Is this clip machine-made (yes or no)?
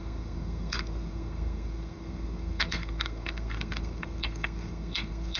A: yes